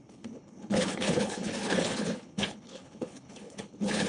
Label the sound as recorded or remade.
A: remade